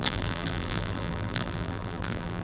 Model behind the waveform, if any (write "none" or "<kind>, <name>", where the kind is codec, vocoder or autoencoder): vocoder, BigVGAN v2